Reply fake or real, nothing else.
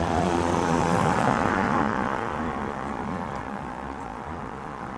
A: fake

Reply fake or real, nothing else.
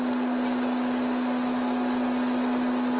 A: real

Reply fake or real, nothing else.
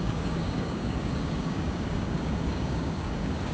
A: fake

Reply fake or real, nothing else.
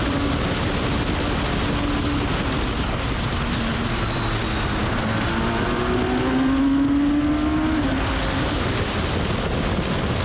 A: real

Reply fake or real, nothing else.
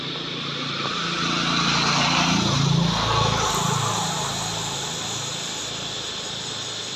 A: real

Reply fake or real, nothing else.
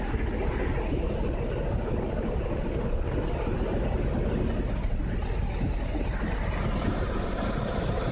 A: real